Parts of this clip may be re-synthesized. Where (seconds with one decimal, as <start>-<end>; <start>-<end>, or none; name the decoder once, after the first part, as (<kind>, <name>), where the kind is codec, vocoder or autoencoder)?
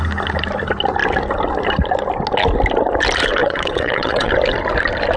3.4-4.3 (vocoder, WaveNeXt)